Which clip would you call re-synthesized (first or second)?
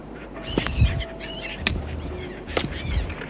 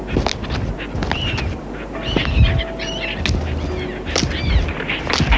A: first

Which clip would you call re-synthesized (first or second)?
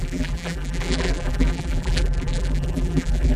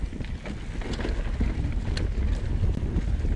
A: first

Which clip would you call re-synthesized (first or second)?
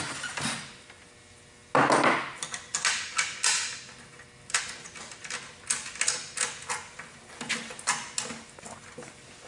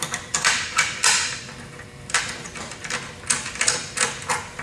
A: second